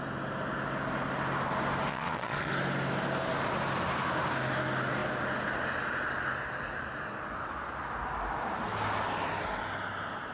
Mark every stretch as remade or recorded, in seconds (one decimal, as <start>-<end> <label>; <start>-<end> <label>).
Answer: 0.0-1.9 recorded; 1.9-2.5 remade; 2.5-10.3 recorded